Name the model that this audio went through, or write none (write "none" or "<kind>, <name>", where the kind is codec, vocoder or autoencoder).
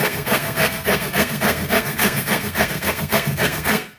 codec, SNAC